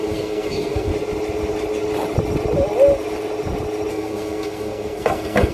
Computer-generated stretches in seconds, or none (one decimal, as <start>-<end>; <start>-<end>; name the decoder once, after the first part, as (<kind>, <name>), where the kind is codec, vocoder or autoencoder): 0.0-0.9 (codec, SNAC); 3.9-5.5